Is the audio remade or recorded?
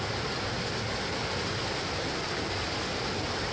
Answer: recorded